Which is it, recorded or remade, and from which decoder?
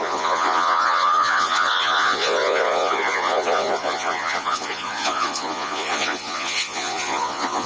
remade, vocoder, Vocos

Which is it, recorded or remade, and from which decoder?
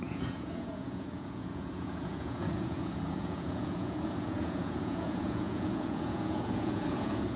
remade, vocoder, Vocos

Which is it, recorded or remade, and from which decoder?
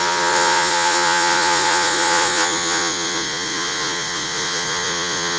remade, vocoder, Vocos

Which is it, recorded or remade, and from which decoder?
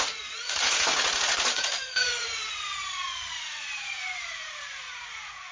remade, vocoder, Vocos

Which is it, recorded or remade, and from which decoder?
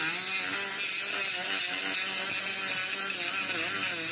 recorded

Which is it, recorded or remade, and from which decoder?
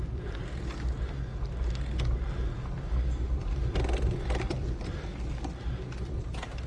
recorded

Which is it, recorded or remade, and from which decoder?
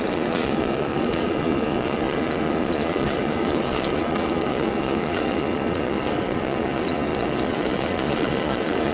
remade, vocoder, Vocos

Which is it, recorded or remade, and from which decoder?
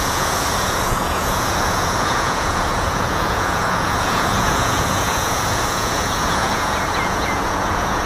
remade, vocoder, Vocos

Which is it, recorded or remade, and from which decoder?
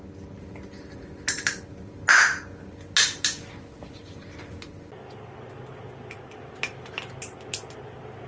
recorded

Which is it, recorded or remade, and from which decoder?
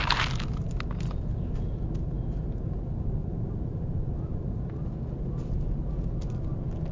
recorded